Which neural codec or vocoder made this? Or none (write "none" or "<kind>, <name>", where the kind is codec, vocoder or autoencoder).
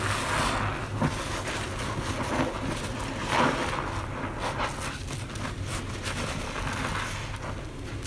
none